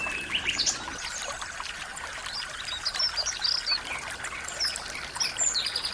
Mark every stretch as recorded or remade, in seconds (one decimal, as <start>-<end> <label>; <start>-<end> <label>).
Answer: 0.0-5.9 recorded